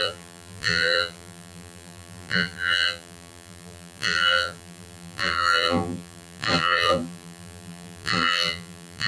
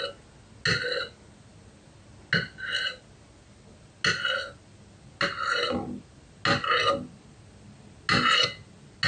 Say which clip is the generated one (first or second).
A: first